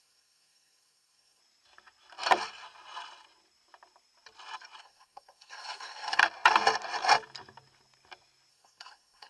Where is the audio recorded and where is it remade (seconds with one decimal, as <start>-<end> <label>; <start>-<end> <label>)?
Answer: 0.0-1.4 remade; 1.4-4.8 recorded; 4.8-6.2 remade; 6.2-8.5 recorded; 8.5-9.3 remade